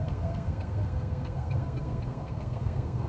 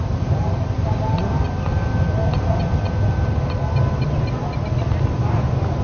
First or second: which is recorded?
second